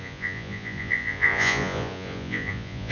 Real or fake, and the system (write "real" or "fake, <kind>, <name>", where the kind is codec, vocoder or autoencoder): fake, vocoder, Vocos